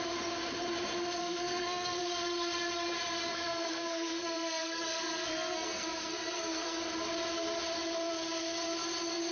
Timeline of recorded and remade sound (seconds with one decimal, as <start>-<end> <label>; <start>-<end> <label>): 0.0-1.2 recorded; 1.2-2.0 remade; 2.0-3.3 recorded; 3.3-6.8 remade; 6.8-9.3 recorded